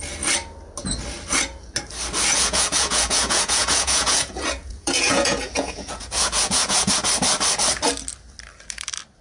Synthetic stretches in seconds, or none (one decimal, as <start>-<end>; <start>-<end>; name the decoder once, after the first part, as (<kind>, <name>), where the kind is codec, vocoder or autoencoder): 2.3-6.9 (vocoder, Vocos)